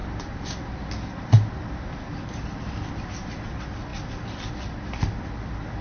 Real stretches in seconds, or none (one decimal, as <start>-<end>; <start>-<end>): 0.0-5.8